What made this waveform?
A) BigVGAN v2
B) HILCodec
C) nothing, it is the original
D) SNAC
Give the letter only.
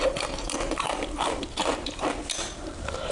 A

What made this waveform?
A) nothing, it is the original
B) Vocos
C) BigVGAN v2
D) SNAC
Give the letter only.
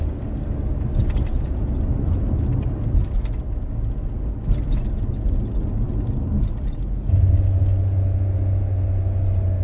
A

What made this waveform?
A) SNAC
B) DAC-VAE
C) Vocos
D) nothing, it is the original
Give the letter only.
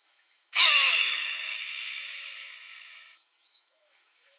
B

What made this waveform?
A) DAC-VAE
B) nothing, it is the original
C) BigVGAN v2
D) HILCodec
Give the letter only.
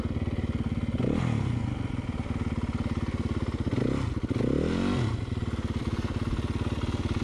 B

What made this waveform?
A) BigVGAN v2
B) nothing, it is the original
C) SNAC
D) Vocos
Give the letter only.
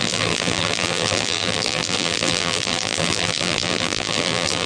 A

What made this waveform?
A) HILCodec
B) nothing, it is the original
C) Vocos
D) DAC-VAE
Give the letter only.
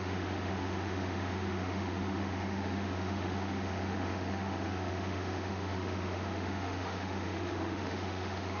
D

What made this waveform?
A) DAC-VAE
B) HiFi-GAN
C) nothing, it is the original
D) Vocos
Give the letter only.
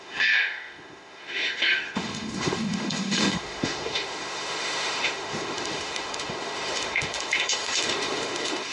A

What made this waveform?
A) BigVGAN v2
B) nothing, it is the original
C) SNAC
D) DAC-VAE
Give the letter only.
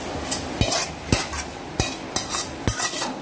B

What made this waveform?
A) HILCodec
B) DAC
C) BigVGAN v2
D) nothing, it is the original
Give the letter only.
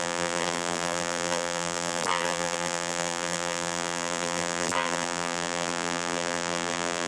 C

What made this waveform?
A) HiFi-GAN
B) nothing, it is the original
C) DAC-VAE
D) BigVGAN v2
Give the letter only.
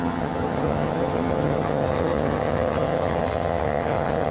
A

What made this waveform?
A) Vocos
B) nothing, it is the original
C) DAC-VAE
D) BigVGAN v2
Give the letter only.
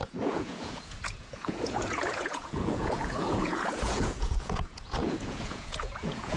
A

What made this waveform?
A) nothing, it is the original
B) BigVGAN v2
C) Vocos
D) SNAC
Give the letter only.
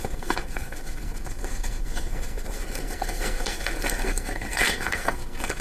D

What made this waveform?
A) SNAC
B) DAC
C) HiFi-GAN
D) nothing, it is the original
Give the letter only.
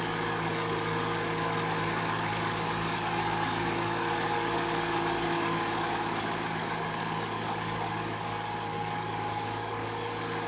B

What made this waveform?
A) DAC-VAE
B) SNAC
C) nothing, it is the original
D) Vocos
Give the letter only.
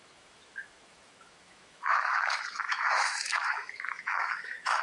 A